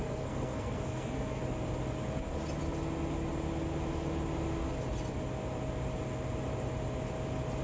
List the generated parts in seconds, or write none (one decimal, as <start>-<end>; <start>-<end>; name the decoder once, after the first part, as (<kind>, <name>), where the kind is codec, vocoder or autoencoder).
0.0-1.4 (codec, SNAC)

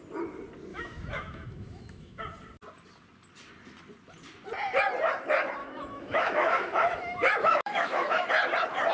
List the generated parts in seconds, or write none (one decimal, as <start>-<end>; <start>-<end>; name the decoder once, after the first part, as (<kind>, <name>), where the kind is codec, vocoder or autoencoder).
0.7-2.2 (autoencoder, DAC-VAE); 5.6-8.3

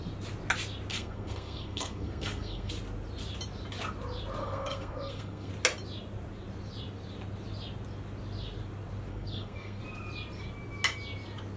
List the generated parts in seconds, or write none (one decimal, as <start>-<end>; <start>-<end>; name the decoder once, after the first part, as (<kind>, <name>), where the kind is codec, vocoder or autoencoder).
0.9-2.7 (codec, SNAC); 4.4-5.5; 9.1-9.8